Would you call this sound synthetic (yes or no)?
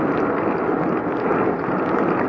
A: no